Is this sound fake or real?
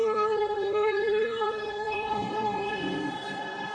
fake